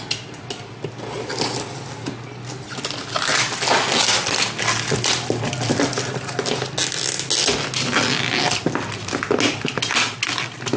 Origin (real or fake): real